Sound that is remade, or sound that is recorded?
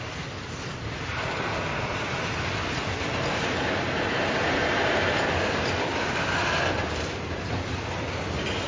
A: recorded